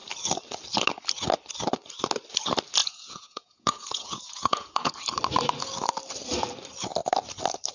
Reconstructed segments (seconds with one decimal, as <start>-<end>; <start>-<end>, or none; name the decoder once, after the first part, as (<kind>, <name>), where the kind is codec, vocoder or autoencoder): 2.8-4.9 (vocoder, Vocos)